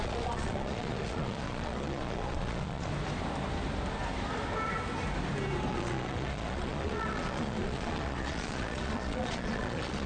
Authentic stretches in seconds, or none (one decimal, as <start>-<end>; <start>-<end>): 2.9-5.7